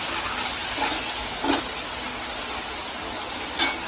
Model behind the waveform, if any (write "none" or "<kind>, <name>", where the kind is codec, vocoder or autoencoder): none